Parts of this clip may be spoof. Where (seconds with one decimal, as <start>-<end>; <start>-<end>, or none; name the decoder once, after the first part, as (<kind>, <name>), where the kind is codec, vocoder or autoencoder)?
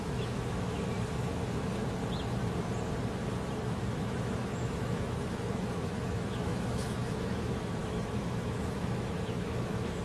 0.0-2.0 (autoencoder, DAC-VAE); 3.7-10.0